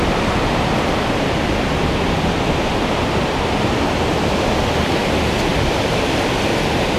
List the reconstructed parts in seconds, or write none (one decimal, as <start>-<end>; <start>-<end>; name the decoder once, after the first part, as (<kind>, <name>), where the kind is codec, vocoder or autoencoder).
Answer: none